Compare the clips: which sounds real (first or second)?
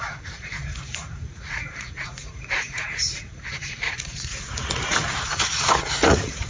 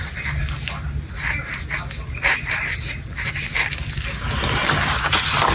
second